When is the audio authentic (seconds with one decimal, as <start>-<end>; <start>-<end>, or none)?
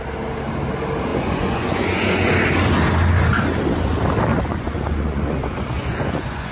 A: 0.0-1.1; 2.3-4.3